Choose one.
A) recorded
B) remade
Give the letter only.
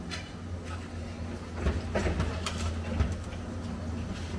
A